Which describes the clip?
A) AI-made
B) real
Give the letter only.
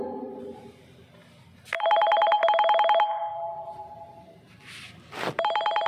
B